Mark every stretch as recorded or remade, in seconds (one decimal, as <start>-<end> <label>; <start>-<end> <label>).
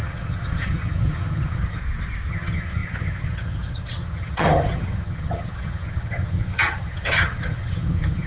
0.0-1.8 remade; 1.8-2.3 recorded; 2.3-8.3 remade